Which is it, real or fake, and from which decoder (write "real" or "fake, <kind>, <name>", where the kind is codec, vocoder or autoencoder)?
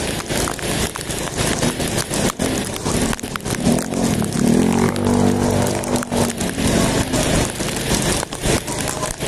real